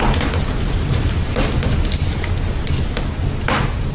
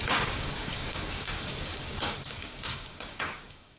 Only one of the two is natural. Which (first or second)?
first